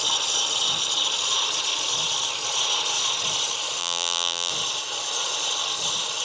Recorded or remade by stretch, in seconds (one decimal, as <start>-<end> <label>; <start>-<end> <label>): 0.0-3.8 recorded; 3.8-4.5 remade; 4.5-6.2 recorded